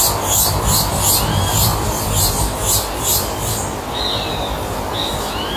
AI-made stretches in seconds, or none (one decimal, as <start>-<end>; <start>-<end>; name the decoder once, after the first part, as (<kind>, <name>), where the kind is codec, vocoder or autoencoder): none